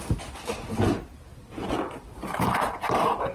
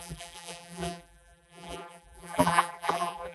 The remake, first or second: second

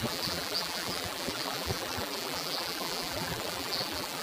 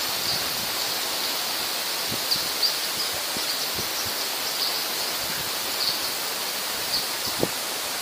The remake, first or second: first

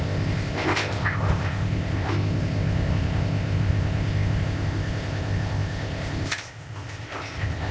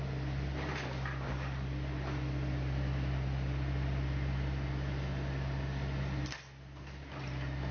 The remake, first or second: first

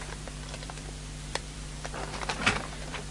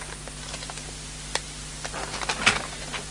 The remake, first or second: first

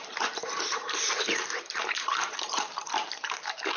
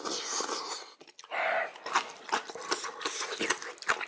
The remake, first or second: first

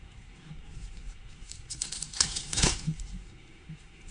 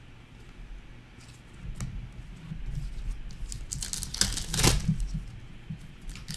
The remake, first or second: first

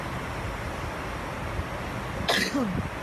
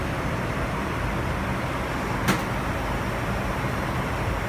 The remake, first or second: first